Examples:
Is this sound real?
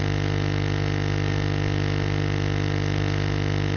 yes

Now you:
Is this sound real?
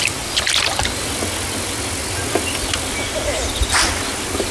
yes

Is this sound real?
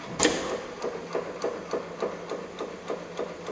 yes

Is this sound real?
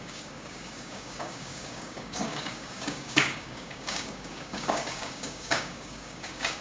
no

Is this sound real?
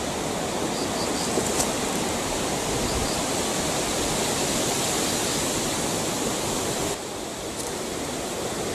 yes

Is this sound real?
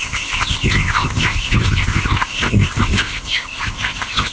no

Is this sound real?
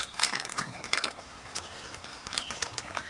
no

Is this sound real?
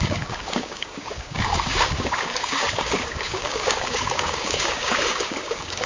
no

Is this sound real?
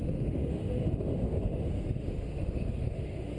no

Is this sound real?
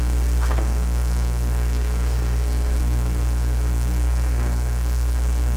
no